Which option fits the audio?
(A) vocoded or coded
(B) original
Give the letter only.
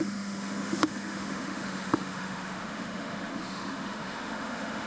A